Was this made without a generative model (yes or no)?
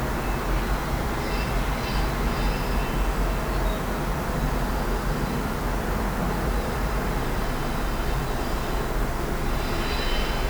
yes